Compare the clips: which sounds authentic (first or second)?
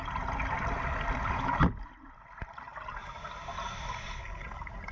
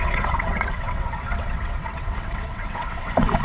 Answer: first